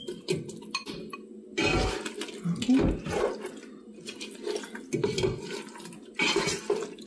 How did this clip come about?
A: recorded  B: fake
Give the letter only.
A